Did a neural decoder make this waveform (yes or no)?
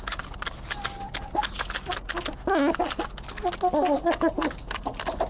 no